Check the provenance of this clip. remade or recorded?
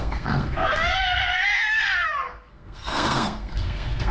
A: remade